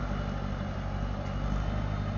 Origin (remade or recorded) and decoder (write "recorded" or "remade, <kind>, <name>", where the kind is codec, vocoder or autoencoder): recorded